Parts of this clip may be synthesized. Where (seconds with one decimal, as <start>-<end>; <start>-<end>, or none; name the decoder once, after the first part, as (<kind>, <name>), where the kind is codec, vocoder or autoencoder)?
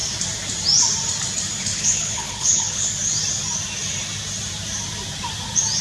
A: 1.6-2.9 (codec, HILCodec)